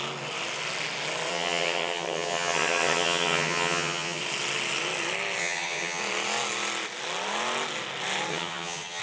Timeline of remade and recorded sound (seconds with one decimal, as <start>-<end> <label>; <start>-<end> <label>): 0.0-1.3 recorded; 1.3-4.2 remade; 4.2-5.4 recorded; 5.4-6.0 remade; 6.0-8.3 recorded; 8.3-9.0 remade

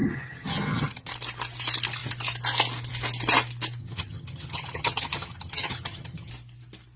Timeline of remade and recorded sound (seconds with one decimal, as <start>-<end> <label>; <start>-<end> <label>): 0.0-1.1 remade; 1.1-3.8 recorded; 3.8-6.3 remade; 6.3-7.0 recorded

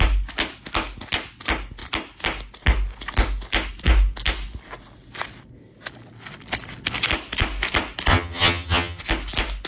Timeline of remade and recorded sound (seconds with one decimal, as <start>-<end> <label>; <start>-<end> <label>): 0.0-8.1 recorded; 8.1-9.0 remade; 9.0-9.7 recorded

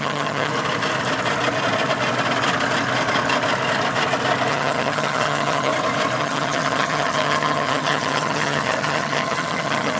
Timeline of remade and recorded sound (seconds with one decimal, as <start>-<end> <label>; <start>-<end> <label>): 0.0-0.5 remade; 0.5-4.5 recorded; 4.5-5.7 remade; 5.7-6.2 recorded; 6.2-10.0 remade

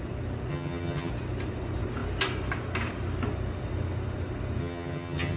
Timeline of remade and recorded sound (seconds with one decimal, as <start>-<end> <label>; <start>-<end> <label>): 0.0-0.5 recorded; 0.5-1.1 remade; 1.1-4.6 recorded; 4.6-5.4 remade

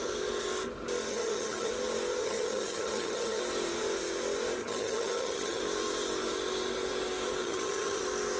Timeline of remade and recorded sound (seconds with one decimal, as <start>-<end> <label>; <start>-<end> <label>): 0.0-1.1 recorded; 1.1-1.7 remade; 1.7-2.2 recorded; 2.2-3.4 remade; 3.4-4.6 recorded; 4.6-5.6 remade; 5.6-7.4 recorded; 7.4-8.0 remade; 8.0-8.4 recorded